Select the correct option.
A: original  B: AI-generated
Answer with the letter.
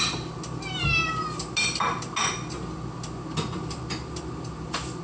A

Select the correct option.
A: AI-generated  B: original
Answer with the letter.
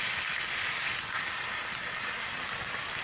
B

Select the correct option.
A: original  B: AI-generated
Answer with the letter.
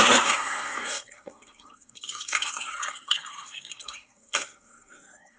B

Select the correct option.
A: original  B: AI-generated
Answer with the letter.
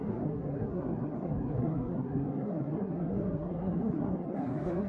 B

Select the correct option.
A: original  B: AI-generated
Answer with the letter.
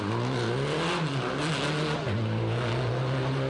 A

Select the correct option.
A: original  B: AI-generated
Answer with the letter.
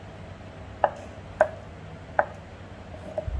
A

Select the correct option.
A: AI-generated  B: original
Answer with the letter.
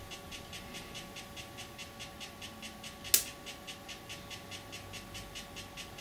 B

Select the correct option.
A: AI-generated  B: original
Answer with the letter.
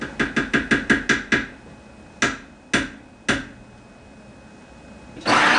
B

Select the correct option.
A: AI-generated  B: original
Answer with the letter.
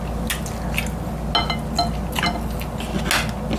B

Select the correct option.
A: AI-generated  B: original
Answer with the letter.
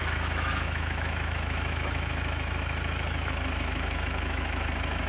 A